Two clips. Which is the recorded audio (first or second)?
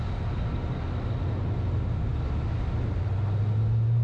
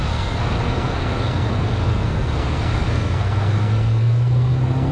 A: first